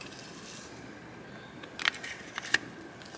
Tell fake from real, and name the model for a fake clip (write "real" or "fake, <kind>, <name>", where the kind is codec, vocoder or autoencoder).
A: real